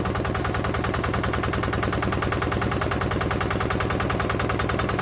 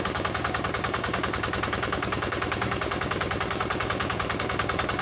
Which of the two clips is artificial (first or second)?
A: second